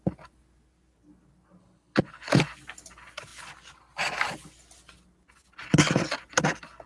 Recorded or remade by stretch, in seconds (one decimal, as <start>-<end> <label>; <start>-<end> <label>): 0.0-1.6 recorded; 1.6-2.3 remade; 2.3-6.9 recorded